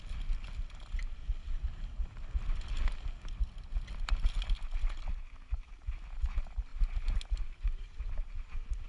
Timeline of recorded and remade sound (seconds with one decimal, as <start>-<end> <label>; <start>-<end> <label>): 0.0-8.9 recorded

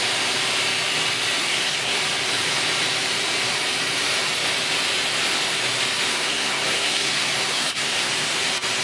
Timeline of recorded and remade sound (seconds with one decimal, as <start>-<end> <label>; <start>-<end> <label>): 0.0-1.4 recorded; 1.4-2.0 remade; 2.0-6.1 recorded; 6.1-8.1 remade; 8.1-8.8 recorded

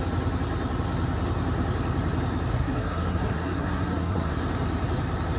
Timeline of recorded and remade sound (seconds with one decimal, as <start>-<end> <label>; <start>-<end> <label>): 0.0-2.5 recorded; 2.5-4.3 remade; 4.3-5.4 recorded

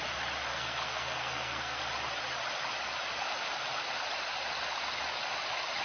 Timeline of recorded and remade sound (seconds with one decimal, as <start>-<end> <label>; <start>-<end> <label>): 0.0-0.5 recorded; 0.5-1.8 remade; 1.8-5.8 recorded

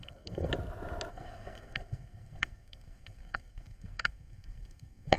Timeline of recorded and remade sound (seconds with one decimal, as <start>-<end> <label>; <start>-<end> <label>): 0.0-0.5 remade; 0.5-1.1 recorded; 1.1-5.2 remade

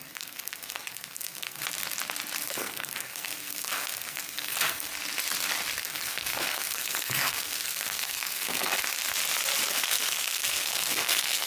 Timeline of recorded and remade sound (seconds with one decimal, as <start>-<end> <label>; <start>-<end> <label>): 0.0-1.6 remade; 1.6-2.5 recorded; 2.5-4.9 remade; 4.9-5.8 recorded; 5.8-8.7 remade; 8.7-9.7 recorded; 9.7-11.5 remade

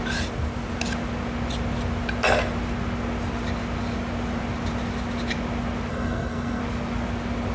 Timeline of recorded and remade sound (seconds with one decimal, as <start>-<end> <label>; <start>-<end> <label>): 0.0-5.9 recorded; 5.9-6.6 remade; 6.6-7.5 recorded

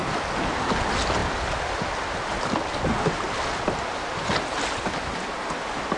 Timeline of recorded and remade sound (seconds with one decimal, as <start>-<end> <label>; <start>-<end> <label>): 0.0-6.0 recorded